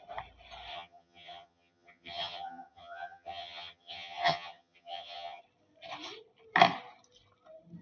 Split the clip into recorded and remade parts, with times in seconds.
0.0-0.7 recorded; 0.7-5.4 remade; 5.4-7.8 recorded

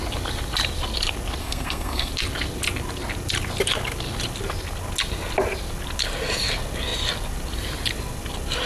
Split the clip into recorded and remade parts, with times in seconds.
0.0-1.4 recorded; 1.4-2.1 remade; 2.1-8.7 recorded

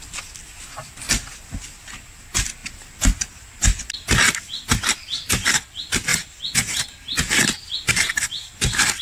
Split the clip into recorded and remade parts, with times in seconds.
0.0-9.0 recorded

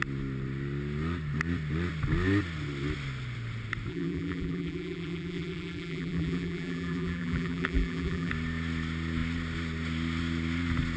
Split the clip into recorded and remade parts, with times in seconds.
0.0-3.9 recorded; 3.9-8.3 remade; 8.3-11.0 recorded

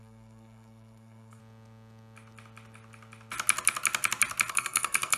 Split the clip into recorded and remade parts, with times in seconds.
0.0-1.4 remade; 1.4-4.5 recorded; 4.5-5.2 remade

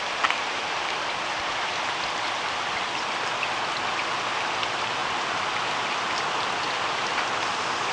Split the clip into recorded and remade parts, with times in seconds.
0.0-7.9 recorded